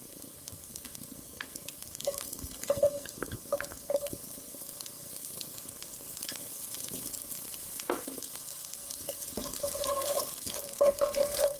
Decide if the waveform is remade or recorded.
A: remade